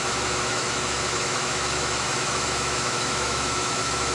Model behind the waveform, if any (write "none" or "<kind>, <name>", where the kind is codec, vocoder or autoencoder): autoencoder, DAC-VAE